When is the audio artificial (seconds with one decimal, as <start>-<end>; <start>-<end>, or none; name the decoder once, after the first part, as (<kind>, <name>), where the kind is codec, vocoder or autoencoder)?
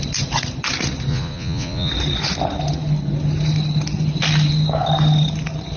1.1-1.9 (vocoder, Vocos)